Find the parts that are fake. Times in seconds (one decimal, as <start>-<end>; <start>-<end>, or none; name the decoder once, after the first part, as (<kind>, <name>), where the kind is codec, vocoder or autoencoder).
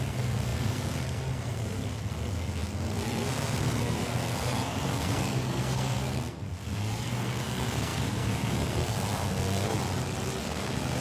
0.0-9.8 (codec, SNAC); 10.4-11.0